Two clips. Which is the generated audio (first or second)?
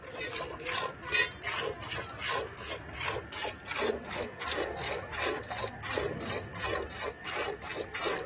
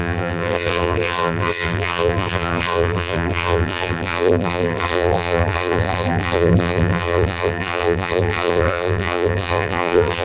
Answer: second